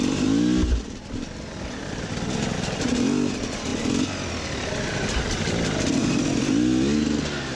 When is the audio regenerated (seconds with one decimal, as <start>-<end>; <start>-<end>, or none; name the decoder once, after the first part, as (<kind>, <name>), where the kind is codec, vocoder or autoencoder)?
none